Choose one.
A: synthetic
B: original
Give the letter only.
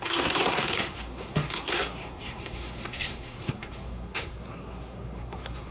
A